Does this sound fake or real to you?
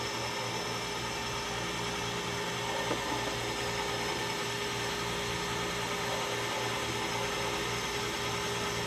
real